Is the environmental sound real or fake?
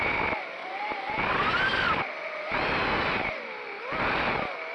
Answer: real